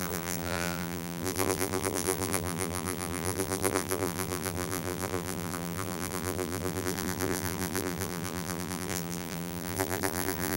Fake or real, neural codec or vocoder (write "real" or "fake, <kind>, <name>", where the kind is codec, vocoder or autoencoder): fake, vocoder, BigVGAN v2